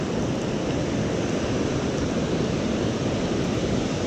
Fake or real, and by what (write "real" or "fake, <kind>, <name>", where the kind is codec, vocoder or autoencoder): real